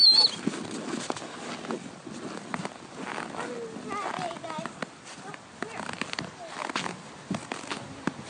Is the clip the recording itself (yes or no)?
yes